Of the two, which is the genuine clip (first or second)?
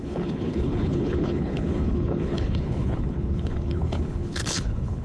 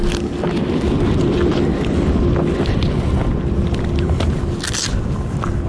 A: second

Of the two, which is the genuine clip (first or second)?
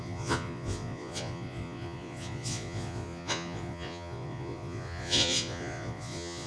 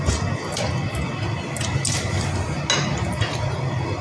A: second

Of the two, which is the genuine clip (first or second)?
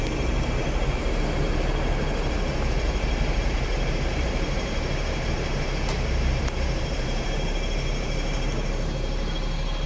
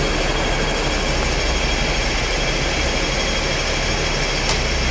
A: second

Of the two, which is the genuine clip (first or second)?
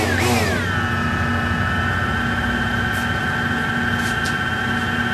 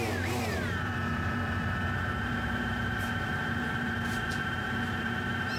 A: first